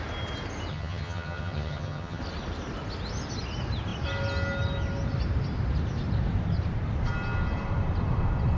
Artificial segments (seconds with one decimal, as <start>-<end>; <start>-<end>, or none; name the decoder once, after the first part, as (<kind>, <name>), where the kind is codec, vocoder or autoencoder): 0.7-2.2 (vocoder, HiFi-GAN)